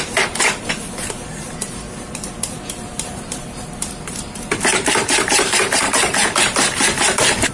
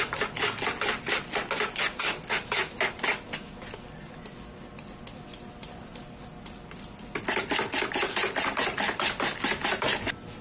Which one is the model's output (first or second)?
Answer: first